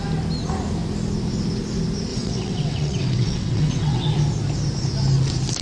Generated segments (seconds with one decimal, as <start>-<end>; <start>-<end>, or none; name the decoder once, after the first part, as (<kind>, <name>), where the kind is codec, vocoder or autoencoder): 2.1-4.1 (vocoder, WaveNeXt)